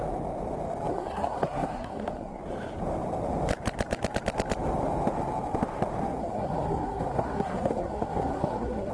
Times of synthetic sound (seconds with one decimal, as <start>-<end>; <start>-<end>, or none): 0.9-2.4; 6.2-8.9